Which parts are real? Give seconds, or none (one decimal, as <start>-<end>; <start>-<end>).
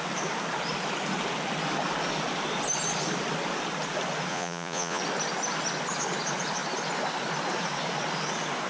0.0-4.3; 5.0-8.7